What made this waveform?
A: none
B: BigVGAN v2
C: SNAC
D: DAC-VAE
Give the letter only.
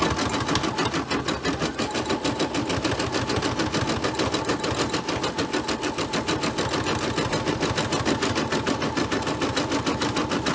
A